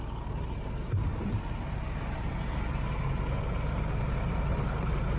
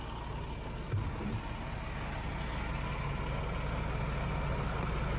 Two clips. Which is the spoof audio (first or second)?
first